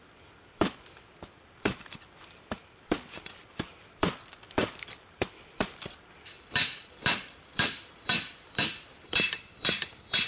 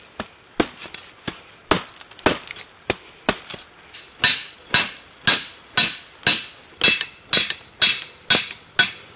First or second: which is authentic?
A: second